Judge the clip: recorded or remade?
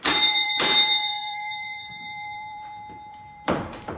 remade